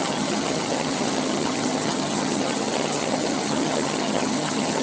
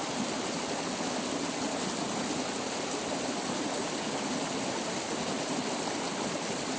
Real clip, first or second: second